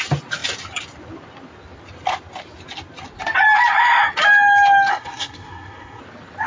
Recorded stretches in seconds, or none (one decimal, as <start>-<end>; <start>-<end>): 0.0-4.9; 6.0-6.5